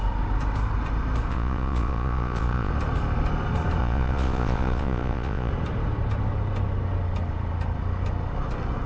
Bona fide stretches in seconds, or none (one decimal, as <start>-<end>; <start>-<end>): 0.0-1.3; 2.7-3.8; 5.5-8.9